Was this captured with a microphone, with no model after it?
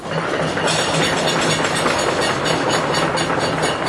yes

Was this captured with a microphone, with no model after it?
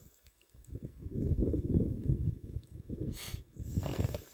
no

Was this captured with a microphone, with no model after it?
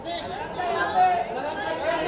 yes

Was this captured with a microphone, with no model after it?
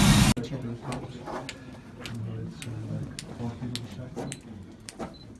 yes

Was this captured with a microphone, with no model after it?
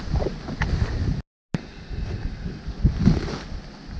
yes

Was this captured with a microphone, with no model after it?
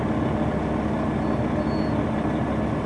yes